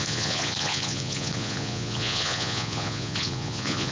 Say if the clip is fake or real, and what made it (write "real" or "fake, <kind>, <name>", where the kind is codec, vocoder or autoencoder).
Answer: fake, vocoder, Vocos